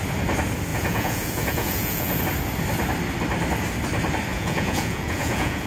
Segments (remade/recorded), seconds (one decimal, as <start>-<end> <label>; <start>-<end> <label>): 0.0-0.7 recorded; 0.7-2.2 remade; 2.2-4.3 recorded; 4.3-5.7 remade